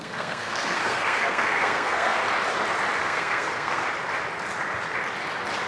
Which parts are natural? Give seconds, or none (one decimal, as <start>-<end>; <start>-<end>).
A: 2.2-3.0; 3.8-5.7